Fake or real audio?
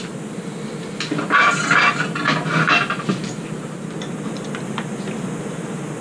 real